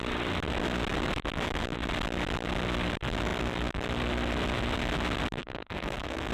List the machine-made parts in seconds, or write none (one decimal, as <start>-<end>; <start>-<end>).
5.4-6.3